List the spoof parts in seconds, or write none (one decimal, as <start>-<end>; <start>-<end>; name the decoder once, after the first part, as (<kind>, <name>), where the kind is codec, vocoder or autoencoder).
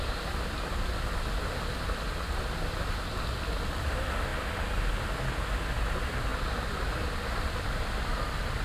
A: none